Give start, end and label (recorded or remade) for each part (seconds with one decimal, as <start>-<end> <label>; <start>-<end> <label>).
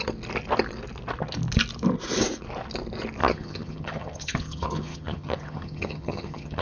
0.0-3.2 recorded; 3.2-6.6 remade